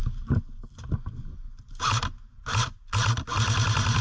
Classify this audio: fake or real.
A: real